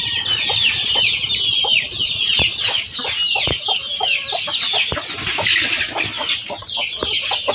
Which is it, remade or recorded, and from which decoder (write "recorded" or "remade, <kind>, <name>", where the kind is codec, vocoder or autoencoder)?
recorded